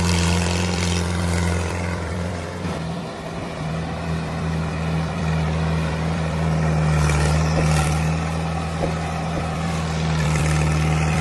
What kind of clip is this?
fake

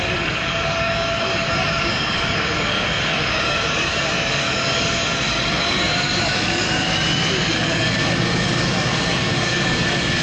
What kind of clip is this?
fake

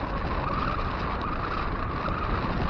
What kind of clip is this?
real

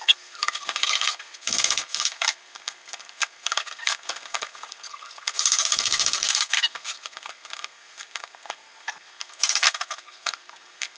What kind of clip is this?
fake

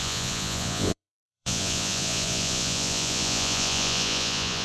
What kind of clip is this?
fake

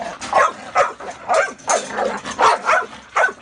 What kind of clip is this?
real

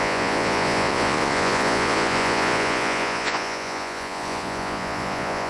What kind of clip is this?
fake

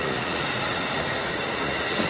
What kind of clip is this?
fake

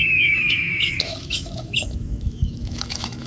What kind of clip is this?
fake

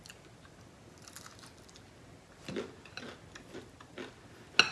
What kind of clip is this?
real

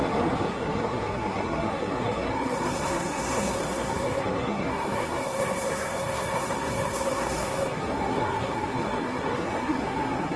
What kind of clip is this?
fake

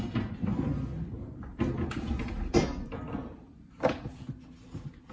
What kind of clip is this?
real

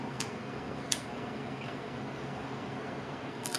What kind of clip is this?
fake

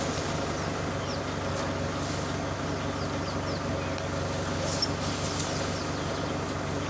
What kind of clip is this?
real